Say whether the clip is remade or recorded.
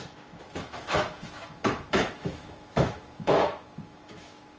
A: remade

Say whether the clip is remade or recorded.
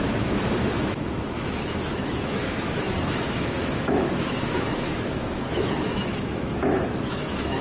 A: remade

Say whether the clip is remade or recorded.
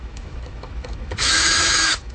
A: remade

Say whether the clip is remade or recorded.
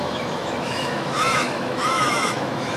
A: remade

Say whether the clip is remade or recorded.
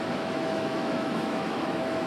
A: remade